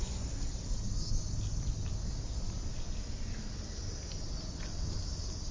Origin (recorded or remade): recorded